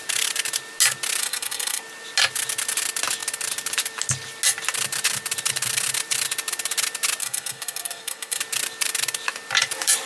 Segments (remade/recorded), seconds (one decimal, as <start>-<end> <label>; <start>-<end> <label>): 0.0-1.2 recorded; 1.2-1.8 remade; 1.8-7.2 recorded; 7.2-8.4 remade; 8.4-10.1 recorded